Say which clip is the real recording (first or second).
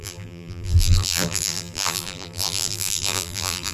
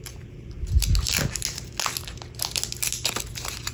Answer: second